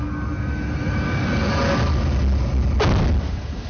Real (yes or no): yes